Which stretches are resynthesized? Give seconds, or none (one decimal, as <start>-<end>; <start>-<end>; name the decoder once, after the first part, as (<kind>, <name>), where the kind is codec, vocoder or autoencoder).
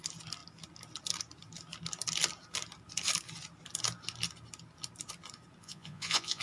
5.6-6.4 (vocoder, Vocos)